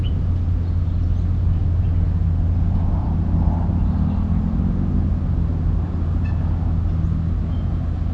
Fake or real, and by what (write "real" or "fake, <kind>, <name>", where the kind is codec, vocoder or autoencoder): real